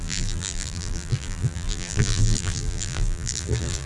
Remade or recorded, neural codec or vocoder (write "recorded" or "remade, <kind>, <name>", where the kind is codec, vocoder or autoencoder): remade, vocoder, BigVGAN v2